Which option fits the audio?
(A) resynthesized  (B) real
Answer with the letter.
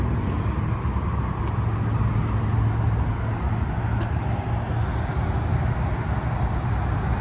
B